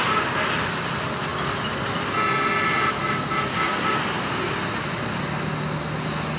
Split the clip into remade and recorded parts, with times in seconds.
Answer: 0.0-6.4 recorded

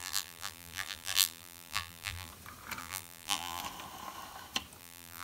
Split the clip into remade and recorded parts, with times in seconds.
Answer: 0.0-2.3 remade; 2.3-2.8 recorded; 2.8-3.6 remade; 3.6-4.8 recorded; 4.8-5.2 remade

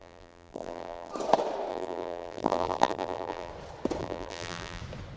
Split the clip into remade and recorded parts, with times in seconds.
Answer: 0.0-1.1 remade; 1.1-1.7 recorded; 1.7-3.5 remade; 3.5-4.0 recorded; 4.0-4.8 remade; 4.8-5.2 recorded